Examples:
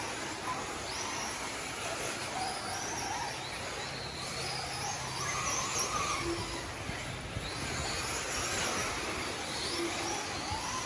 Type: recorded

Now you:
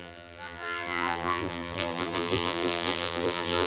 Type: remade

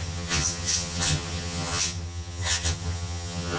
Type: remade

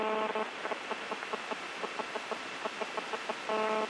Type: recorded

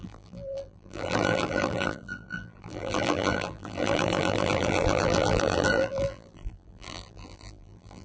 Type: remade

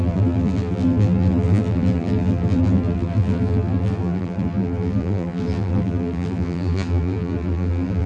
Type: remade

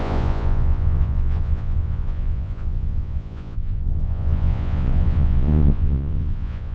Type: remade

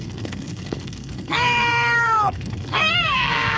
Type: remade